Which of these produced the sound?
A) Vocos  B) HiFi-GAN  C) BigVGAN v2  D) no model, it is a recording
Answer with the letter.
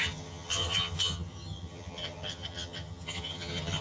B